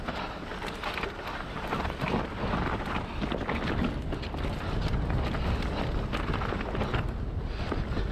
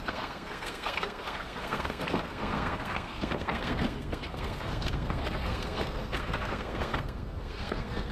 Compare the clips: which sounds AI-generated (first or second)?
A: second